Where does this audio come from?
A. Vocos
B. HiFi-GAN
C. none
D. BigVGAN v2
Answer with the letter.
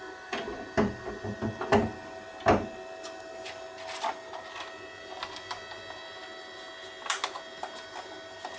C